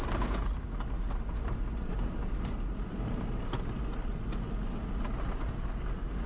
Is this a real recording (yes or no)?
yes